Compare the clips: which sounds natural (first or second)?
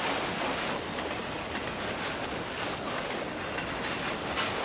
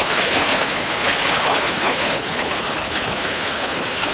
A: first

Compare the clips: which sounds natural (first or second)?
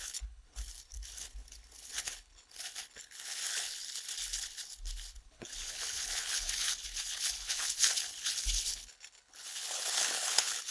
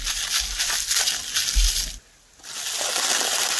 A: second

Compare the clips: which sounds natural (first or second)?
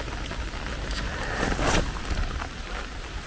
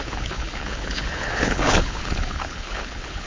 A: first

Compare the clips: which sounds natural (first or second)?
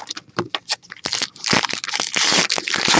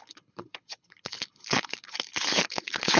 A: first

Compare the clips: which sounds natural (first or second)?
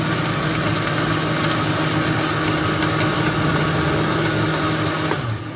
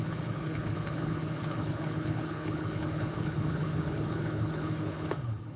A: first